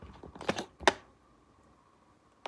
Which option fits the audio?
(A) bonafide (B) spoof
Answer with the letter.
A